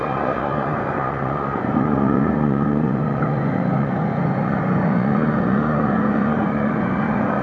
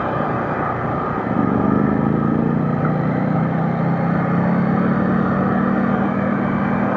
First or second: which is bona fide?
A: second